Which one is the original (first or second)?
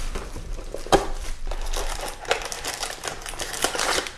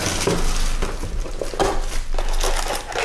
second